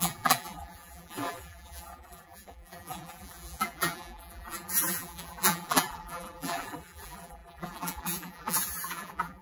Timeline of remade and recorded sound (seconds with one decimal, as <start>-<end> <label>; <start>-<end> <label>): 0.0-9.4 remade